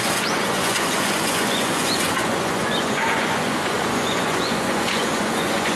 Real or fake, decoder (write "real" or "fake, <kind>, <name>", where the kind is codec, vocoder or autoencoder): fake, vocoder, Vocos